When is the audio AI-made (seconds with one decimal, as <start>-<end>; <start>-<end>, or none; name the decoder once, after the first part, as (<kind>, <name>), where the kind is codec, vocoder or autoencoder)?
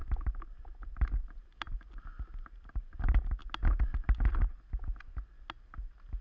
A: none